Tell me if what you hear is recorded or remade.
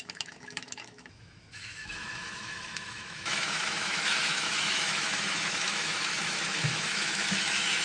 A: remade